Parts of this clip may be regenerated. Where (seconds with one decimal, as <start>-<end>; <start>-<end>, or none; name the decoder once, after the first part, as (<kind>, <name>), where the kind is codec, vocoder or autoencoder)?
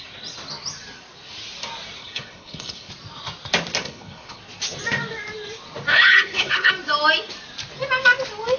2.0-2.9 (codec, HILCodec); 3.8-4.4; 5.9-6.7